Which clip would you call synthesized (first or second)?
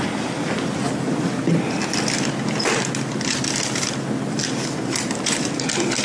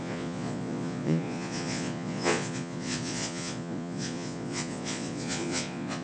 second